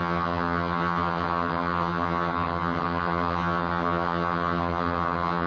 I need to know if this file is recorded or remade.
remade